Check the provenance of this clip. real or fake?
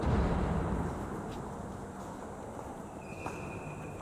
fake